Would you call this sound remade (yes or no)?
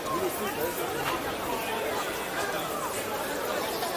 no